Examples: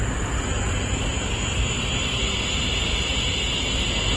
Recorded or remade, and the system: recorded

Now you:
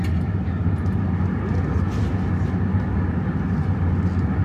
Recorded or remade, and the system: recorded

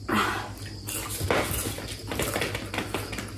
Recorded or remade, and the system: recorded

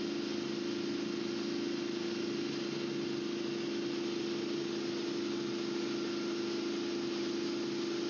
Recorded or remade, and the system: recorded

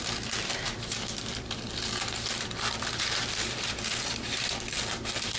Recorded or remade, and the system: remade, vocoder, BigVGAN v2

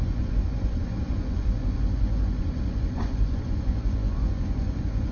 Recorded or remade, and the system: remade, vocoder, Vocos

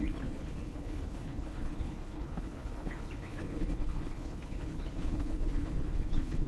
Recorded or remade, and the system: remade, codec, HILCodec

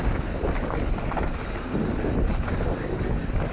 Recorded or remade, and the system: recorded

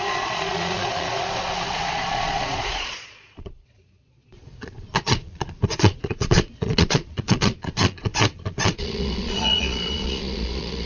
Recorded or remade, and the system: remade, vocoder, Vocos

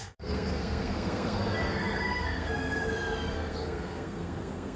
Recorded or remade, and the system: remade, codec, SNAC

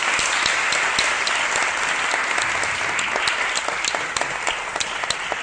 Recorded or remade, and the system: recorded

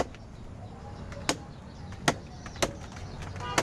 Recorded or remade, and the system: recorded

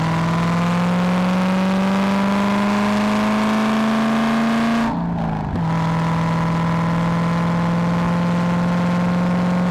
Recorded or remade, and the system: recorded